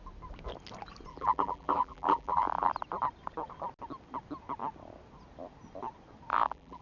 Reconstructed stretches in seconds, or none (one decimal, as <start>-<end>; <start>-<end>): 1.1-2.7; 6.3-6.8